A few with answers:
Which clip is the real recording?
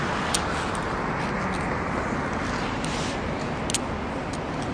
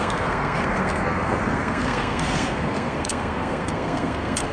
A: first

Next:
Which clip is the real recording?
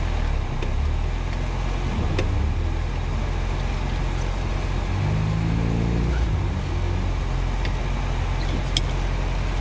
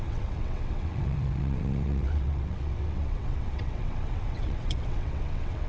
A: first